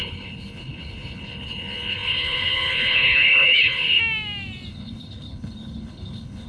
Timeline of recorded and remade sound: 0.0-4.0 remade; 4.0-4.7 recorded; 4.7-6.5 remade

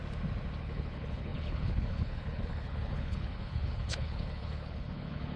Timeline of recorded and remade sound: 0.0-0.6 recorded; 0.6-5.4 remade

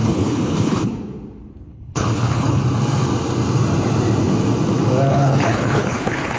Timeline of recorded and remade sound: 0.0-0.9 remade; 0.9-1.7 recorded; 1.7-2.6 remade; 2.6-5.1 recorded; 5.1-6.4 remade

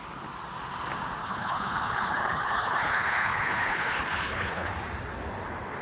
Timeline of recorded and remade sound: 0.0-1.2 recorded; 1.2-4.7 remade; 4.7-5.8 recorded

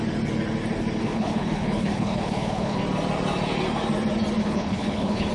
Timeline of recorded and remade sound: 0.0-1.0 recorded; 1.0-2.8 remade; 2.8-4.4 recorded; 4.4-5.3 remade

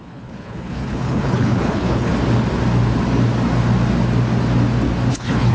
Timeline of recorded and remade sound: 0.0-2.1 remade; 2.1-5.1 recorded; 5.1-5.5 remade